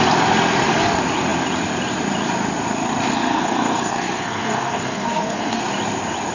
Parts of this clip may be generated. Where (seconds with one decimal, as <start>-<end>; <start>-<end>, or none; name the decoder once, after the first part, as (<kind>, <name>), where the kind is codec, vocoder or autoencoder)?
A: 3.1-5.6 (codec, SNAC)